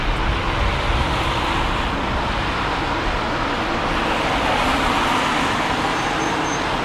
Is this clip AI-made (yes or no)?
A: no